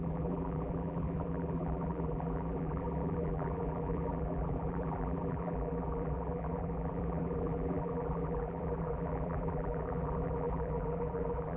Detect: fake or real fake